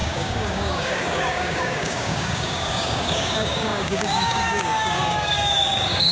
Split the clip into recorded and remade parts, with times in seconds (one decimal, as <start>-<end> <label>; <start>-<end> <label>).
0.0-6.1 remade